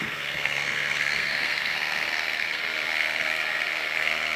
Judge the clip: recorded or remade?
remade